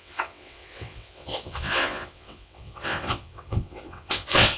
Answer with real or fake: fake